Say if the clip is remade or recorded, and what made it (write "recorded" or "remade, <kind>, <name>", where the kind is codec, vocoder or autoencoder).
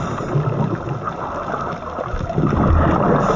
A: recorded